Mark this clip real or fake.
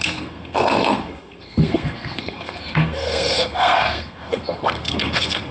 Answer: fake